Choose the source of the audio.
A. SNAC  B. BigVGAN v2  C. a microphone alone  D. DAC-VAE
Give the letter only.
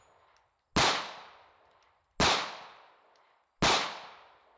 C